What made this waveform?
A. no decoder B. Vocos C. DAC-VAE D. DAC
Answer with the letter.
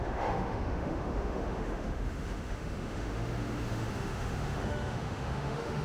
C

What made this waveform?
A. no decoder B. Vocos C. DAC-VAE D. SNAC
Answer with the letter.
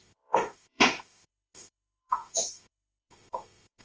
C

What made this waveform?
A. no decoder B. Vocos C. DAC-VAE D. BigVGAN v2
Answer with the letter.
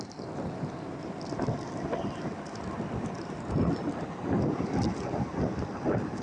A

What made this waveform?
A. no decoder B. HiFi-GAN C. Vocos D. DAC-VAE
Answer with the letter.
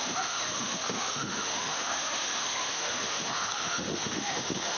D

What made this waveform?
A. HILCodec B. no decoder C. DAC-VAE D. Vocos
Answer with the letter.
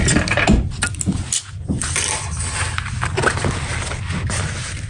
B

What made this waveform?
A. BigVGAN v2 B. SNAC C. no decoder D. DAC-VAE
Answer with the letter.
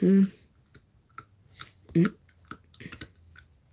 C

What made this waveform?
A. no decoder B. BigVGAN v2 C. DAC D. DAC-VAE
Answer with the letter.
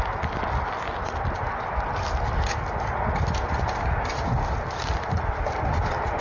A